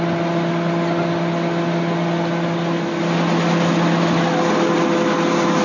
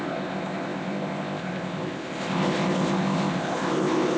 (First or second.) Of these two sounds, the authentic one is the first